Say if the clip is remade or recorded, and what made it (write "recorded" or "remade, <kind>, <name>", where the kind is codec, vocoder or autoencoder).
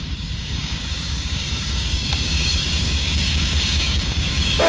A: remade, codec, DAC